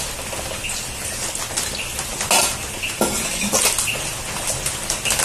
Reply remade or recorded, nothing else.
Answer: recorded